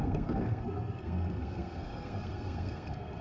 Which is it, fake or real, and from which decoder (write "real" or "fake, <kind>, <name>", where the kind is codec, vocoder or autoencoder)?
fake, codec, SNAC